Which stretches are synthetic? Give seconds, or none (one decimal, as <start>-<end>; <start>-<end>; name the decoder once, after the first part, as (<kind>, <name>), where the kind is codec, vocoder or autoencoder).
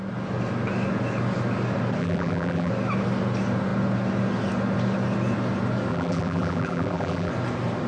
2.0-2.7 (vocoder, BigVGAN v2); 5.9-7.3